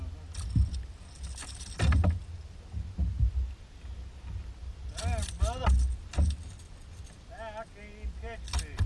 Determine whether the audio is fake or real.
real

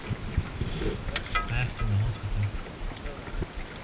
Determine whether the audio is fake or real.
real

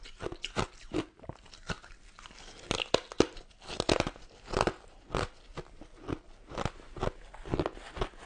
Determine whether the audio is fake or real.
real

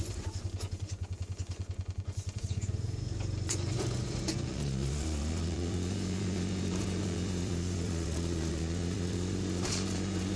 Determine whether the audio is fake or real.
fake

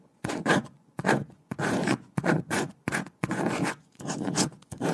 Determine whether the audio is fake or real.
fake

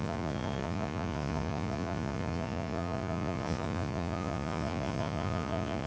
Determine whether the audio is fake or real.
fake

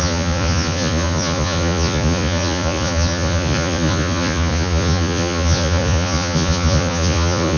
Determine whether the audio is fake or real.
fake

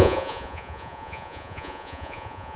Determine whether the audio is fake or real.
fake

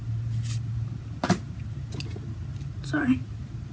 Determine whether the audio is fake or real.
real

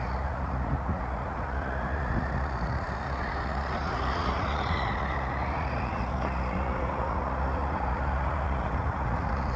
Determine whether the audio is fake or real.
fake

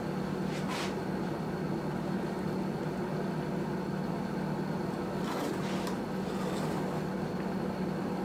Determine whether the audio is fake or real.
real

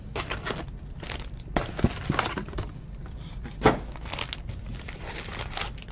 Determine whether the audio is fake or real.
real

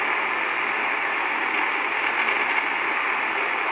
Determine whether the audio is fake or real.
real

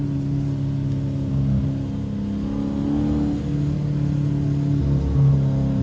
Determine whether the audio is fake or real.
real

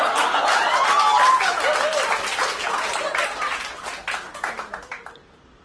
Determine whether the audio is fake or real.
real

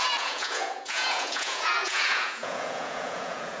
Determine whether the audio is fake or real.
fake